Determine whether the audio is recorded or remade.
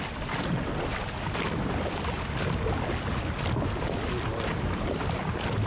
recorded